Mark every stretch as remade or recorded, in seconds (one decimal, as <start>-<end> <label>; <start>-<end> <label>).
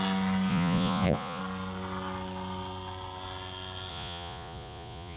0.0-0.5 recorded; 0.5-1.4 remade; 1.4-3.9 recorded; 3.9-5.2 remade